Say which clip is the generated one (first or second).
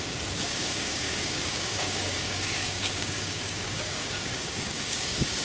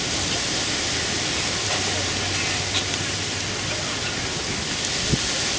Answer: first